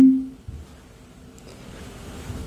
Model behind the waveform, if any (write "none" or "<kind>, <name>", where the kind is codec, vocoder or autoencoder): none